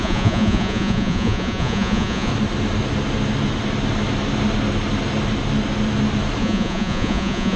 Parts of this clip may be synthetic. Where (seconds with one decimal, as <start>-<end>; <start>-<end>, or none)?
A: 0.0-2.3; 6.4-7.6